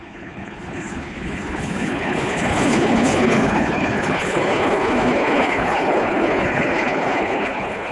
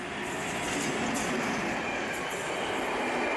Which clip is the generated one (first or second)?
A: first